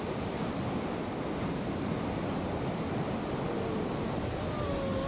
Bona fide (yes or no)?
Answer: yes